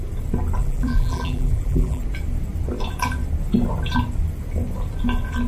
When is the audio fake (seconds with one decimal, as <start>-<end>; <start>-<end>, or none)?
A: 0.6-2.0